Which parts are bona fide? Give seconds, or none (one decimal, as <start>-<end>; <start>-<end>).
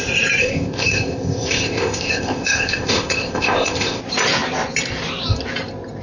0.0-0.4; 4.0-6.0